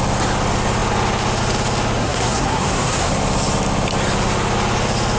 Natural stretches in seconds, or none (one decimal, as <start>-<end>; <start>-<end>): 0.0-2.0; 3.1-5.2